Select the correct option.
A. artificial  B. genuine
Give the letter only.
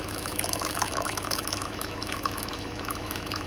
A